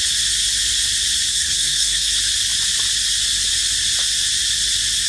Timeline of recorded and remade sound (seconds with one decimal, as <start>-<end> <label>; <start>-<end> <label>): 0.0-1.3 recorded; 1.3-2.1 remade; 2.1-5.1 recorded